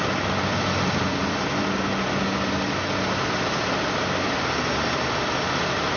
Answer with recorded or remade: recorded